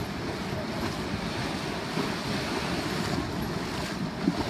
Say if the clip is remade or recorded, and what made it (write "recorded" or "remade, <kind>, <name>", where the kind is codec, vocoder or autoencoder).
recorded